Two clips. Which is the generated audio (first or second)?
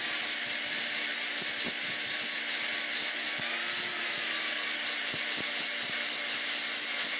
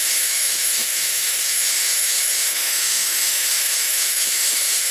second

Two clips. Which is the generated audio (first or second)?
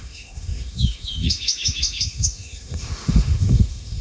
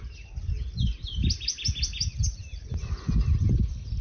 first